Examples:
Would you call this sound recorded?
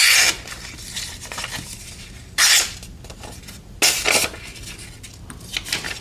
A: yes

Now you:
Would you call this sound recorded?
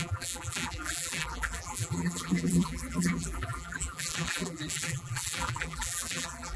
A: no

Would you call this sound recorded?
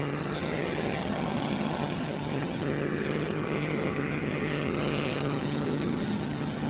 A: no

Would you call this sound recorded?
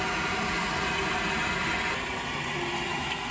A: yes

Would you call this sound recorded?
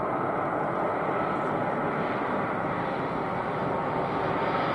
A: yes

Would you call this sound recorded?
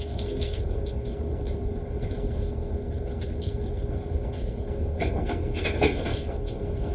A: no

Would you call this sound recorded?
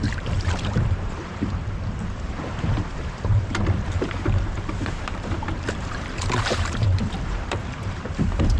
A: no